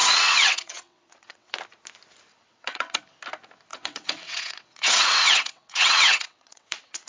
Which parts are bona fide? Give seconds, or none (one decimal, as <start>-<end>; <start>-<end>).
1.5-2.3; 3.0-3.7